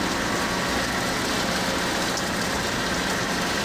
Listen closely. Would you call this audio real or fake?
real